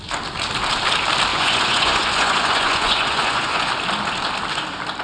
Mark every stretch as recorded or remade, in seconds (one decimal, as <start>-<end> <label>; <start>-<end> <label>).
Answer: 0.0-1.3 recorded; 1.3-3.7 remade; 3.7-5.0 recorded